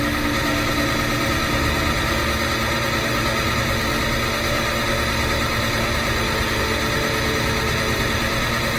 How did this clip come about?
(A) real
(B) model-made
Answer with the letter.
A